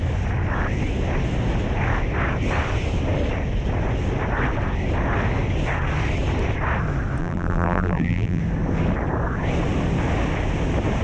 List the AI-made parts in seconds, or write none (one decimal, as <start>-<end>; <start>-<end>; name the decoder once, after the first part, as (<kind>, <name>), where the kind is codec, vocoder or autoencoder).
7.2-8.4 (vocoder, BigVGAN v2)